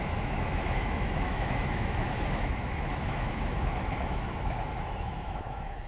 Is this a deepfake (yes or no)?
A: yes